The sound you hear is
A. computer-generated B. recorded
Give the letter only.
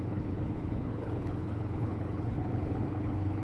A